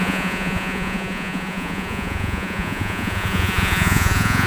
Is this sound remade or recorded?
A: remade